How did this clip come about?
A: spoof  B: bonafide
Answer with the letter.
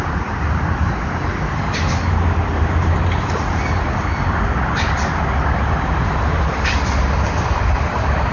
B